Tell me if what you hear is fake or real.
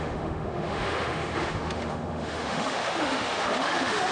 fake